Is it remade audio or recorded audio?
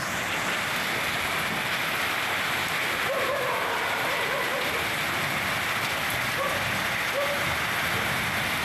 recorded